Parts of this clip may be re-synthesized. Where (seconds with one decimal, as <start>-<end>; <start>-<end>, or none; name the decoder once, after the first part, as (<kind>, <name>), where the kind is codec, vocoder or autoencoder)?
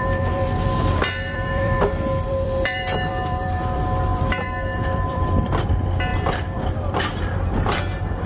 0.0-8.3 (vocoder, BigVGAN v2)